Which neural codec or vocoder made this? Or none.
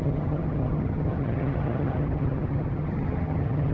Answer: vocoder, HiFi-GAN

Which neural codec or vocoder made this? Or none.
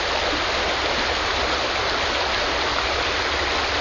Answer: none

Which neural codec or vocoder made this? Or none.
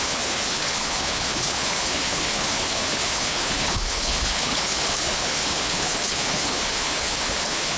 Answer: codec, HILCodec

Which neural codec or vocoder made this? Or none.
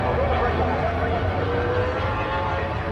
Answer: none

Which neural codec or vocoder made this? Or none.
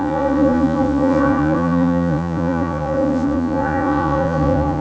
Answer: vocoder, Vocos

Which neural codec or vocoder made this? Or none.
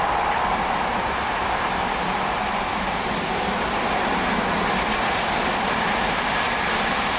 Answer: none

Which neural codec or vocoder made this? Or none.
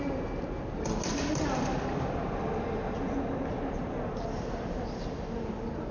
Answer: none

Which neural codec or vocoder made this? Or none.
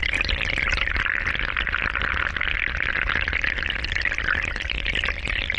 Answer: none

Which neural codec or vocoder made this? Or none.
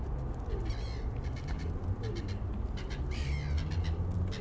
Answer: none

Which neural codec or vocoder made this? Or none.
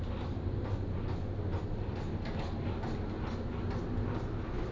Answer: none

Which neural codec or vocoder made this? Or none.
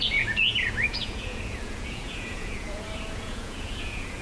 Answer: vocoder, Vocos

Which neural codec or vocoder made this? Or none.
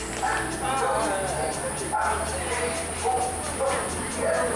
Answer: none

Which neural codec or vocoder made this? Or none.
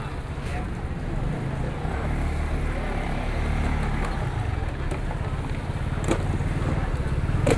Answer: none